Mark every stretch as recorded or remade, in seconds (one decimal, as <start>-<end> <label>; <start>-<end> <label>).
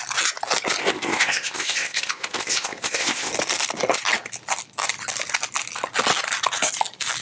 0.0-0.8 recorded; 0.8-3.3 remade; 3.3-7.2 recorded